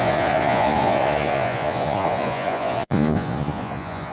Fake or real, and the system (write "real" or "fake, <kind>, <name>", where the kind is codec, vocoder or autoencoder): fake, vocoder, Vocos